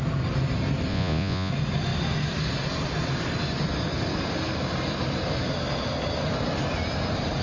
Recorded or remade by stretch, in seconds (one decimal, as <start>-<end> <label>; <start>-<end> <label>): 0.0-0.9 recorded; 0.9-1.5 remade; 1.5-7.4 recorded

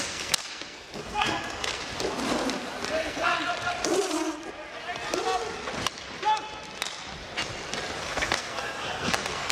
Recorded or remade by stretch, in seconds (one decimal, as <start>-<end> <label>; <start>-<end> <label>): 0.0-1.8 remade; 1.8-2.9 recorded; 2.9-3.3 remade; 3.3-8.0 recorded; 8.0-9.5 remade

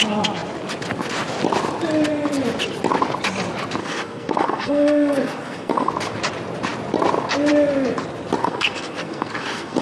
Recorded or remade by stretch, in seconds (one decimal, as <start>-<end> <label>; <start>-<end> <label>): 0.0-3.8 recorded; 3.8-5.9 remade; 5.9-8.4 recorded; 8.4-9.8 remade

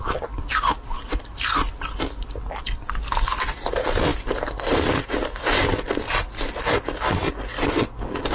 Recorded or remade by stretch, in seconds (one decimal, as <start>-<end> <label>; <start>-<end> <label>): 0.0-8.3 recorded

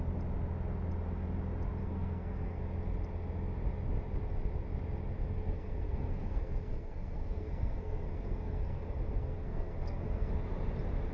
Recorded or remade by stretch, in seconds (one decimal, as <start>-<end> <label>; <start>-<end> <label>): 0.0-1.8 recorded; 1.8-2.6 remade; 2.6-5.2 recorded; 5.2-10.3 remade; 10.3-11.1 recorded

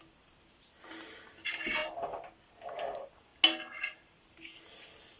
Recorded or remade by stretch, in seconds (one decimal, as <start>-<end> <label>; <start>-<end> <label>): 0.0-5.2 recorded

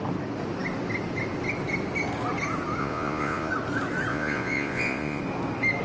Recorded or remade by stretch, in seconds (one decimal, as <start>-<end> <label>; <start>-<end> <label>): 0.0-2.8 recorded; 2.8-3.5 remade; 3.5-4.1 recorded; 4.1-5.2 remade; 5.2-5.8 recorded

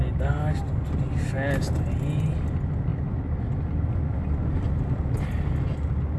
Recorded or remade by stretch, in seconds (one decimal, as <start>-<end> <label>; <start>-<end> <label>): 0.0-6.2 recorded